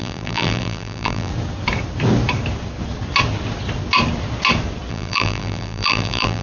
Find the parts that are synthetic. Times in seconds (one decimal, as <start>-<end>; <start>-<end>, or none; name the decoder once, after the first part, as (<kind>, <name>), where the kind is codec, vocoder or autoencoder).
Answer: 0.0-1.3 (vocoder, BigVGAN v2); 4.9-6.4